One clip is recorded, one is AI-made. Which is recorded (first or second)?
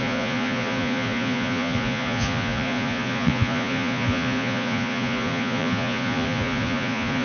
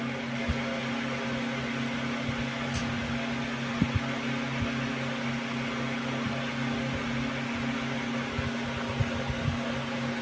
second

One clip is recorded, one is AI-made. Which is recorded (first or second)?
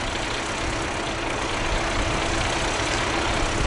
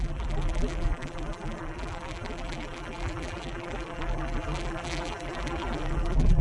first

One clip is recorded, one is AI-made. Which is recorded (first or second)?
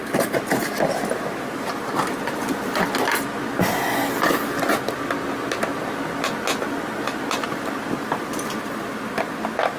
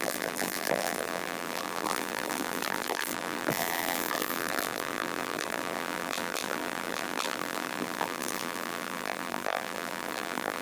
first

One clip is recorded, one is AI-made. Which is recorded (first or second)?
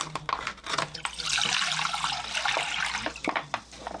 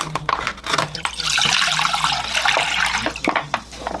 first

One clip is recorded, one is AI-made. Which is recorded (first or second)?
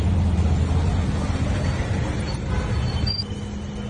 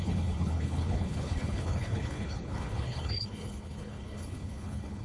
first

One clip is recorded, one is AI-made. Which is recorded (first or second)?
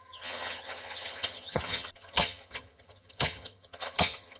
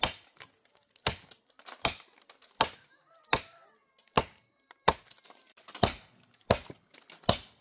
second